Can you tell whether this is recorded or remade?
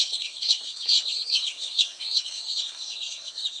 remade